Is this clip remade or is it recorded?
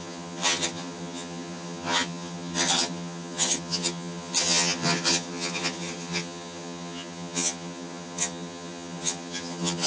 remade